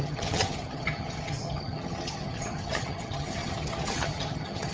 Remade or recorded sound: remade